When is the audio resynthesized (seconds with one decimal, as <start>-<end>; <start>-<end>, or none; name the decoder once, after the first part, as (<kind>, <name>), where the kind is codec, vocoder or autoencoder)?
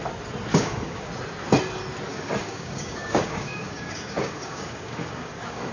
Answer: 0.5-1.1 (codec, DAC); 2.1-5.7